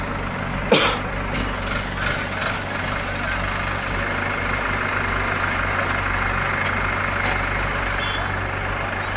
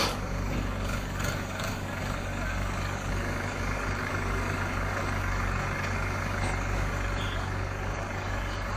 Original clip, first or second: first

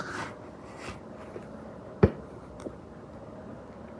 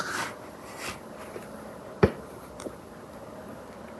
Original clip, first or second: first